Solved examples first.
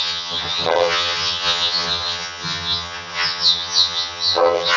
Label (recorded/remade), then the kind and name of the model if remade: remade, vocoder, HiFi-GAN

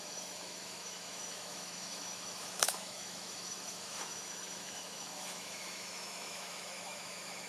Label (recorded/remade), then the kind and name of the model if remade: remade, autoencoder, DAC-VAE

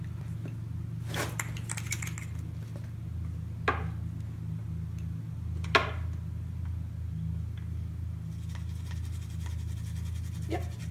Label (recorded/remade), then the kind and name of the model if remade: recorded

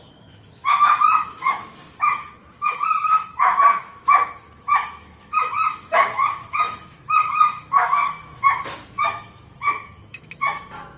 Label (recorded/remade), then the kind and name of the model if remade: remade, autoencoder, DAC-VAE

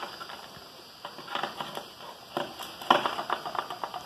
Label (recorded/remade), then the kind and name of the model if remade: recorded